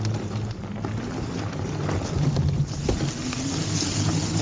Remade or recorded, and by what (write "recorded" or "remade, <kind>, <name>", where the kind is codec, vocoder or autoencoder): recorded